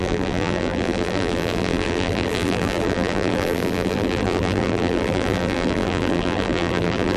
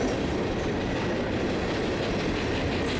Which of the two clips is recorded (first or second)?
second